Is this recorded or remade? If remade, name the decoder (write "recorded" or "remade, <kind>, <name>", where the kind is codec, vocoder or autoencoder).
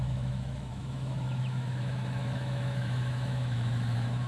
remade, autoencoder, DAC-VAE